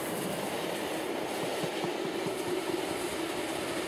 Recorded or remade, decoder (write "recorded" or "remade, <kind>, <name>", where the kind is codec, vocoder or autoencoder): recorded